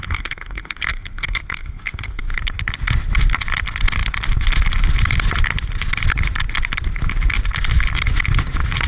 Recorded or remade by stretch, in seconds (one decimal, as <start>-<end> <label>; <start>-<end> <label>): 0.0-2.4 remade; 2.4-8.9 recorded